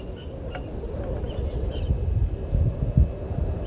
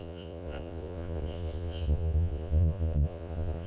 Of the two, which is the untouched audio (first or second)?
first